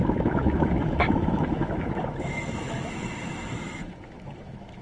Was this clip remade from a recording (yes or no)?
yes